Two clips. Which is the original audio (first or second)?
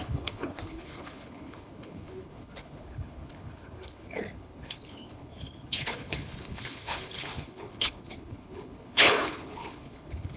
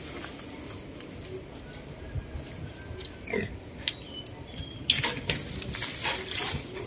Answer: second